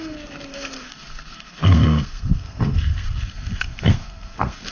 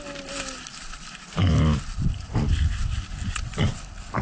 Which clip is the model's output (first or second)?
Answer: first